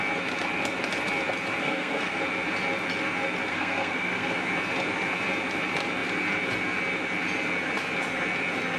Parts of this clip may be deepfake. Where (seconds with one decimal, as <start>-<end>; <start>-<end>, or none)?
1.6-2.2; 3.5-4.4